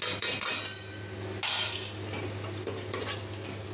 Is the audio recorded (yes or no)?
yes